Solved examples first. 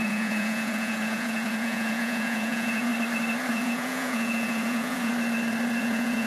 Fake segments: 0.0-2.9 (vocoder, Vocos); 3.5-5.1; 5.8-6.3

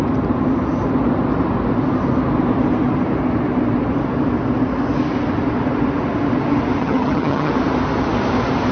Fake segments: 6.8-7.5 (vocoder, HiFi-GAN)

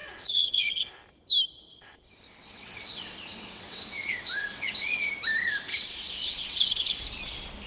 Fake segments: 0.0-0.9 (vocoder, WaveNeXt); 1.7-5.1; 5.7-7.0

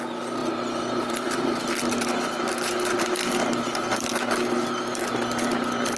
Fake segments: 0.4-1.6 (vocoder, BigVGAN v2)

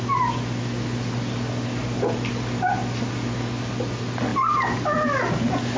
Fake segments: none

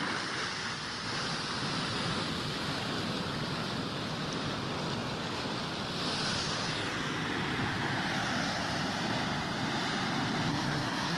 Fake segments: 10.5-11.2 (codec, SNAC)